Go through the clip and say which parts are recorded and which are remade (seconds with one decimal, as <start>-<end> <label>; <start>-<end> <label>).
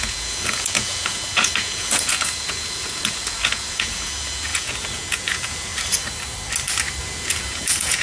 0.0-5.7 remade; 5.7-7.0 recorded; 7.0-8.0 remade